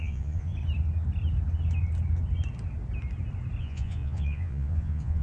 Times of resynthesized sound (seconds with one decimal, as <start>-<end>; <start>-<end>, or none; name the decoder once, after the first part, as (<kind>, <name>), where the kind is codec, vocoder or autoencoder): 0.0-0.5 (vocoder, Vocos); 3.6-5.2